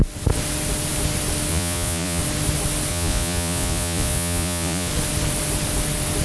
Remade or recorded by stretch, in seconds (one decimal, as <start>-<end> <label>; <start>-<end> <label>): 0.0-1.5 recorded; 1.5-2.2 remade; 2.2-2.9 recorded; 2.9-4.9 remade; 4.9-6.2 recorded